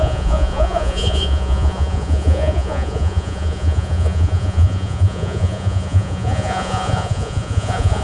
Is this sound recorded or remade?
remade